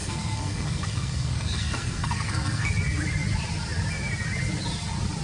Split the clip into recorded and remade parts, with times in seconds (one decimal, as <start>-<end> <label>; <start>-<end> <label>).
0.0-2.7 remade; 2.7-5.2 recorded